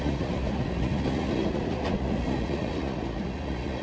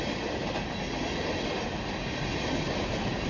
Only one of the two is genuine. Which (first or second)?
second